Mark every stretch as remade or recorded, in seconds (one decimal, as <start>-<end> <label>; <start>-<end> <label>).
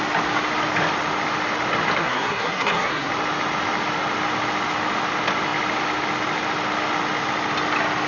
0.0-2.0 recorded; 2.0-3.1 remade; 3.1-8.1 recorded